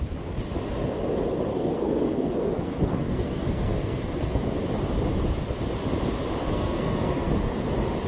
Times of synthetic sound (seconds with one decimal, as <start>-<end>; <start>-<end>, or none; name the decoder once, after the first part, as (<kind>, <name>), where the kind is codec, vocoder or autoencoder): 1.5-4.4 (codec, SNAC); 6.4-7.3